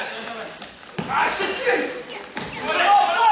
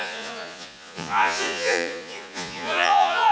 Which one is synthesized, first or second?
second